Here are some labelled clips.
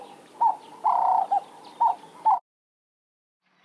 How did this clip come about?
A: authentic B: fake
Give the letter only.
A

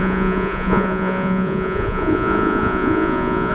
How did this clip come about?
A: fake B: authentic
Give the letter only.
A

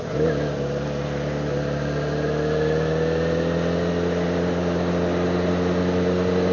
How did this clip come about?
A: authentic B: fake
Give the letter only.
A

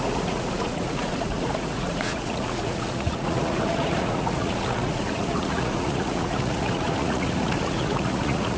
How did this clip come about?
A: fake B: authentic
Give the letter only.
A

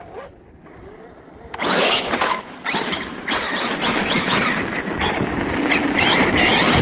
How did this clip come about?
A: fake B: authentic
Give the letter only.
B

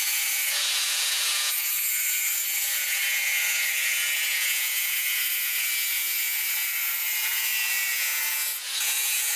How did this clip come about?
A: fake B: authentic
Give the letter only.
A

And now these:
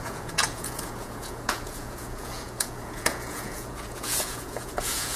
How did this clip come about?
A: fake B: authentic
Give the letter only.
A